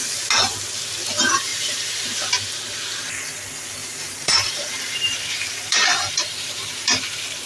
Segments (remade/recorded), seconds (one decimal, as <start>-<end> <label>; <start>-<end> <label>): 0.0-1.5 recorded; 1.5-2.0 remade; 2.0-3.8 recorded; 3.8-7.0 remade; 7.0-7.5 recorded